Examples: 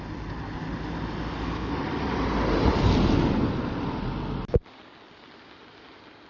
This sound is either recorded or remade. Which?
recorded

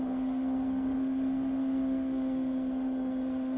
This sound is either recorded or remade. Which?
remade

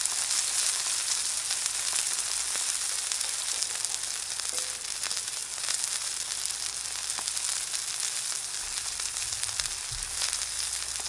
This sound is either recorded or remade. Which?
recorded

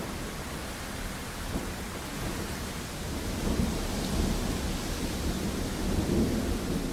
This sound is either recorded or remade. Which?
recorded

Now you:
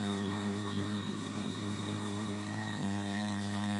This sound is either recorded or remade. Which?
remade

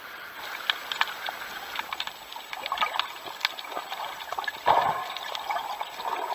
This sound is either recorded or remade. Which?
remade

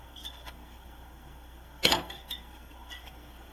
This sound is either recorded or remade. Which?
remade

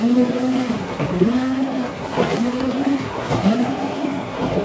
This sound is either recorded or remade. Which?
remade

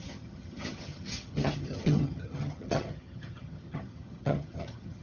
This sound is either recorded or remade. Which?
remade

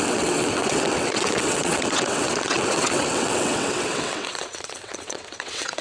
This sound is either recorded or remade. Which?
remade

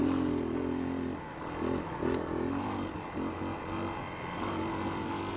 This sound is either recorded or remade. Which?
recorded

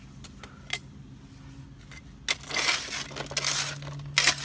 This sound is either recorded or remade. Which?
recorded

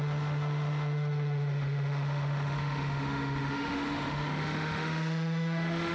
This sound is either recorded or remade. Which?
remade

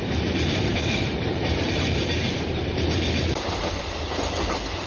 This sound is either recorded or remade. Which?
remade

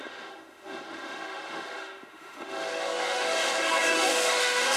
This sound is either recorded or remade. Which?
remade